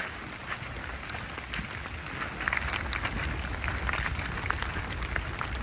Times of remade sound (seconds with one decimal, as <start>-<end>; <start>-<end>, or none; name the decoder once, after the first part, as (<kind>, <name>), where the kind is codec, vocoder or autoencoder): none